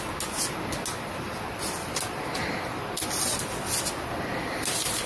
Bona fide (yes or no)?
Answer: yes